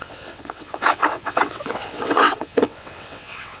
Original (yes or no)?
no